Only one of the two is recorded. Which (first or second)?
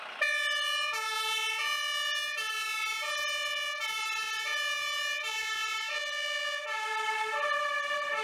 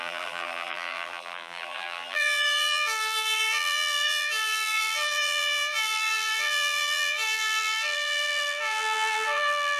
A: first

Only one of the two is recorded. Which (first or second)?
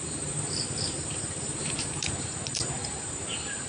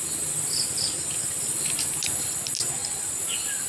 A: second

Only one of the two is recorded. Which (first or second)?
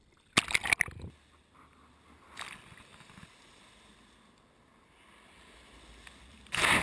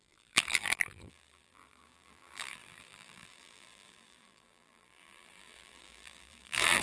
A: first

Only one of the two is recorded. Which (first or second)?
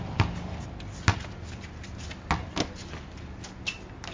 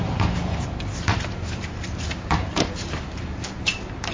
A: first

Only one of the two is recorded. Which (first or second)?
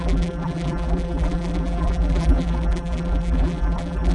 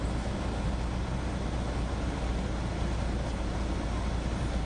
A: second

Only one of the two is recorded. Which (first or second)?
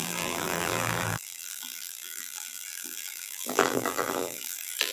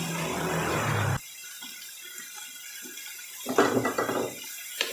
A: second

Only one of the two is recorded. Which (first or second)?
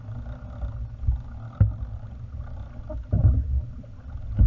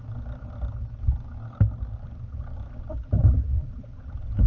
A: first